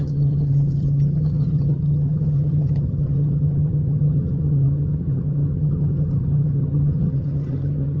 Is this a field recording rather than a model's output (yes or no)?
no